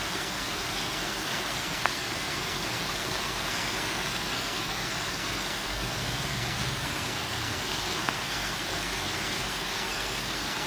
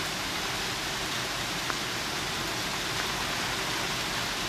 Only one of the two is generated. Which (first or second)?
first